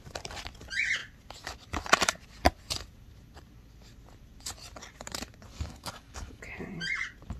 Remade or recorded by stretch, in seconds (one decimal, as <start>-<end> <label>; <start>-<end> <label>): 0.0-5.5 recorded; 5.5-6.4 remade; 6.4-7.4 recorded